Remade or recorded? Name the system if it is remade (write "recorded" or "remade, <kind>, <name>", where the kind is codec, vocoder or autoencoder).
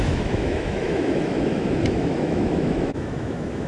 remade, autoencoder, DAC-VAE